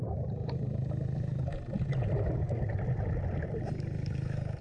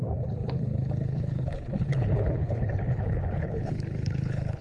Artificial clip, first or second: second